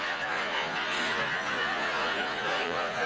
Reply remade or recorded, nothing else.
remade